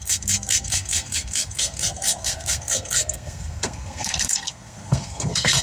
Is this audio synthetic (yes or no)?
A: yes